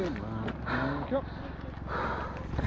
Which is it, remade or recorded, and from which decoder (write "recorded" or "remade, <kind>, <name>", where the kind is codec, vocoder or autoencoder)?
recorded